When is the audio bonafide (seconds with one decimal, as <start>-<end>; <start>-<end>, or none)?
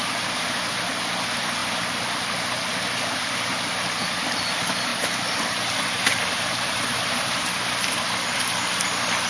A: 0.9-4.9; 7.4-9.3